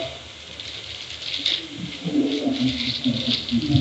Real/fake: real